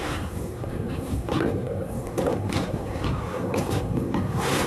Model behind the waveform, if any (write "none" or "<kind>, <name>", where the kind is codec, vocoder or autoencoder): codec, SNAC